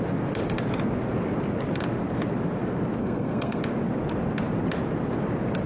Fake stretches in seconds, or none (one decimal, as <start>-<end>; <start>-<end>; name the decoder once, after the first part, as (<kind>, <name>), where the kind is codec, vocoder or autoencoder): 3.0-3.6 (codec, SNAC)